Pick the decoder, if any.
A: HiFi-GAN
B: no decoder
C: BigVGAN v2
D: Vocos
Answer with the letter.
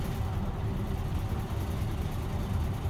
B